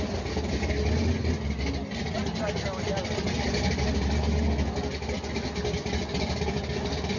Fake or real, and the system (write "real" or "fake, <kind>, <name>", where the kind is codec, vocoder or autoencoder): real